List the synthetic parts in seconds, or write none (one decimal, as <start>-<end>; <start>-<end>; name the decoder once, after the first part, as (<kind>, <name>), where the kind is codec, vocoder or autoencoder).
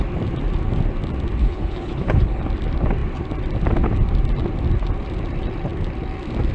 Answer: 1.4-2.4 (codec, HILCodec)